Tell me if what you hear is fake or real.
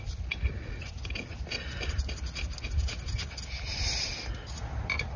real